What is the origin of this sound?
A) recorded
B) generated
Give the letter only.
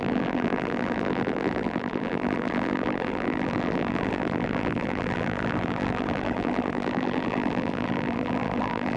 B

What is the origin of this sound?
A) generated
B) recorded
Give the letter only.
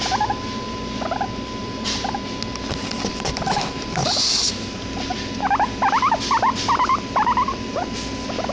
B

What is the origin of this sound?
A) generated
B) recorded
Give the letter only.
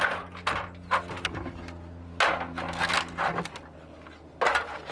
B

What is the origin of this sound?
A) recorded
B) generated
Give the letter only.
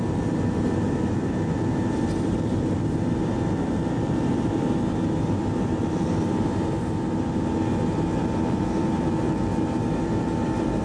B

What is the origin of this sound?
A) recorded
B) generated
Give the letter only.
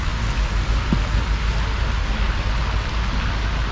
A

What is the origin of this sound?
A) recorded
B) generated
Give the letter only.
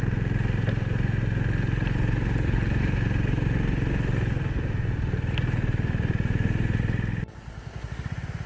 A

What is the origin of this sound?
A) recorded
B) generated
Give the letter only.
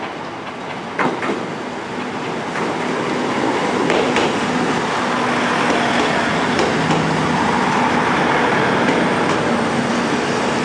A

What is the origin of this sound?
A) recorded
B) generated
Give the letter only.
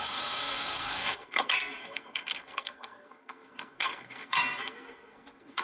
B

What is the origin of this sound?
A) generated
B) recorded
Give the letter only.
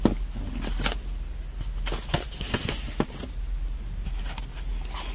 B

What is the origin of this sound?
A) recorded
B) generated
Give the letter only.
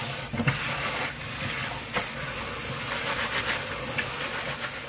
A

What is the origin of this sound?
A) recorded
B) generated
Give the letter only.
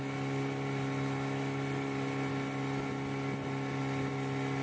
A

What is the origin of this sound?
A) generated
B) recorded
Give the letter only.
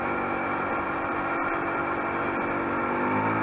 B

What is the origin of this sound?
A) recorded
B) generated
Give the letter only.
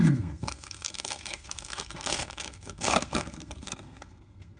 B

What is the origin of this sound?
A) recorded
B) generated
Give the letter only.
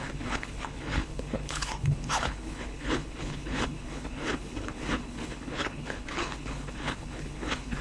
B